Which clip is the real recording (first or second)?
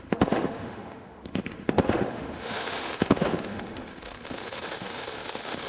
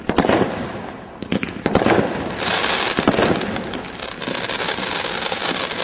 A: second